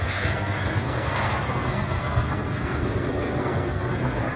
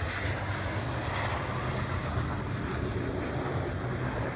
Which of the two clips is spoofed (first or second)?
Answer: first